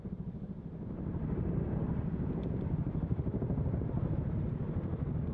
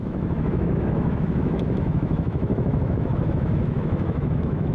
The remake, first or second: second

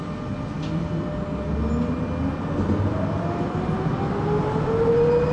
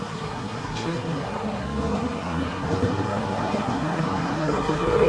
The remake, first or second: second